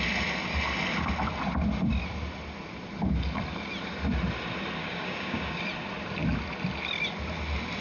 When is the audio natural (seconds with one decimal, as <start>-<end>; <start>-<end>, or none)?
0.0-4.8; 5.6-7.8